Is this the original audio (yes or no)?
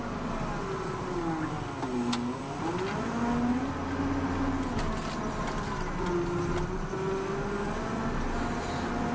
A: yes